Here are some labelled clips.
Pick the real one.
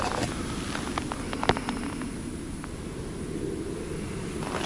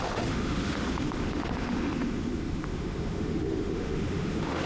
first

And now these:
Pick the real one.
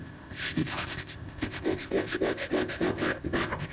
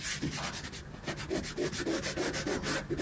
second